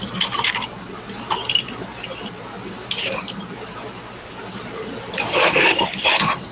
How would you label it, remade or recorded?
recorded